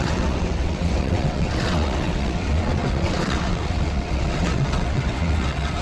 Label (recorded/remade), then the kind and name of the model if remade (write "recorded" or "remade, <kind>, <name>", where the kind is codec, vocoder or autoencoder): remade, vocoder, WaveNeXt